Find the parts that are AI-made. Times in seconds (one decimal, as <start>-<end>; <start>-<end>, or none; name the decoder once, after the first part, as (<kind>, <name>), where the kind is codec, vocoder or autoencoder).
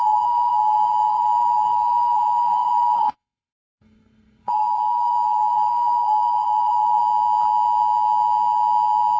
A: 0.0-7.0 (codec, SNAC)